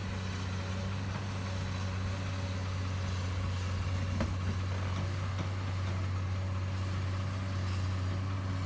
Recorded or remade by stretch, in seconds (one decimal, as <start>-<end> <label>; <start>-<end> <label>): 0.0-8.7 recorded